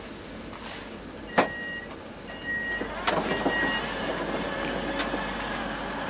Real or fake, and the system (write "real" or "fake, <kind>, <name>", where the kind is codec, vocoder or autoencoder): real